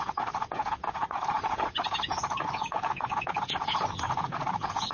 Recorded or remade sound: remade